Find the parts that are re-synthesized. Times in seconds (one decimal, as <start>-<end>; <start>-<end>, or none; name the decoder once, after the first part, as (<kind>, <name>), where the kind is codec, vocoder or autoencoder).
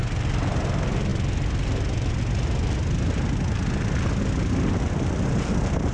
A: none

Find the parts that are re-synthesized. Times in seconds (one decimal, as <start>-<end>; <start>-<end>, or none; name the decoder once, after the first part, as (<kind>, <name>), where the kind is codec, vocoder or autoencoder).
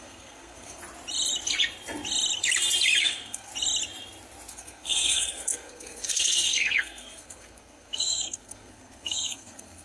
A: 0.0-0.8 (codec, SNAC); 3.0-3.5; 4.5-9.8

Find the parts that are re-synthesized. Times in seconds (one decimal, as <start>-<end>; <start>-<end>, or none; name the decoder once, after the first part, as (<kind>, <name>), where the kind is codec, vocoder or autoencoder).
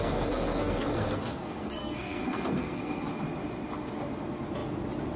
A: 0.0-3.1 (codec, SNAC)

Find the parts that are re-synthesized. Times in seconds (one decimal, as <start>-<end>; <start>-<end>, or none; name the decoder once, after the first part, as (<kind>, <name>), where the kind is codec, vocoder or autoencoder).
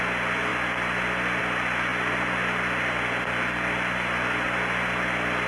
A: none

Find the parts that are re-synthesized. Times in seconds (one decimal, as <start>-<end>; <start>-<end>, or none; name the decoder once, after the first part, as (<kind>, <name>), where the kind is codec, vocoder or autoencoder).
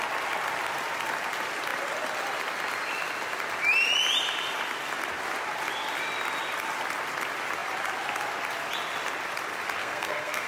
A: 9.8-10.5 (codec, SNAC)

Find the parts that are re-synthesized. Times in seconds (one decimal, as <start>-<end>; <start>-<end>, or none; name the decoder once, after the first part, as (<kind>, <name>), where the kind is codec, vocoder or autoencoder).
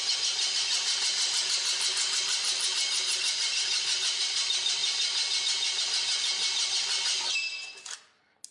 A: none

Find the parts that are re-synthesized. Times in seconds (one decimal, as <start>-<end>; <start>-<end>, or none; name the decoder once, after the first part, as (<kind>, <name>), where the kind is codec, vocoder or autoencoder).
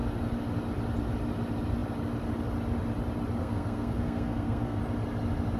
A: 3.4-4.8 (codec, SNAC)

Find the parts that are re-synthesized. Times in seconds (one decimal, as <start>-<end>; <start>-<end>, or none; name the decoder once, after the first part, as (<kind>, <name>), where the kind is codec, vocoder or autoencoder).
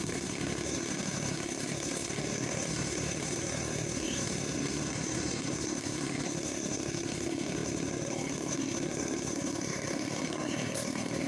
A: 0.0-11.3 (codec, SNAC)